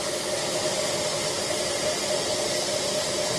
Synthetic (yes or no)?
no